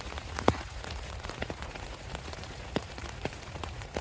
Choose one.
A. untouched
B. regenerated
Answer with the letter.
B